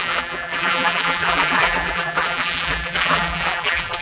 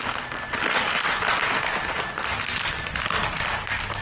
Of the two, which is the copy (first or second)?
first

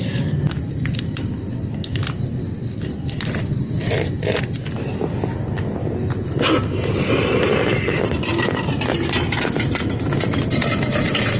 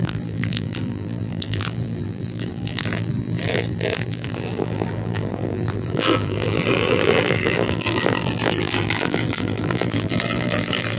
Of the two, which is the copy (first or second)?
second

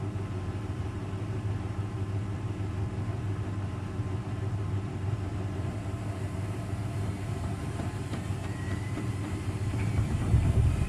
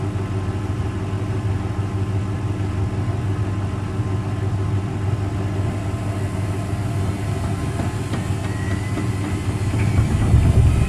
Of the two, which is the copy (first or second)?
first